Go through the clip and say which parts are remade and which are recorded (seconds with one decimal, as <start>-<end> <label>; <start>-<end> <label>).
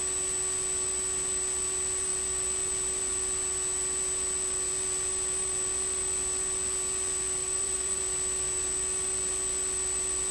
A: 0.0-7.4 recorded; 7.4-8.0 remade; 8.0-10.3 recorded